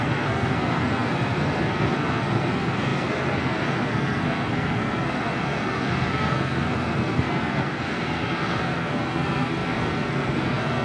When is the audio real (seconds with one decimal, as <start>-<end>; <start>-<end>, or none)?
none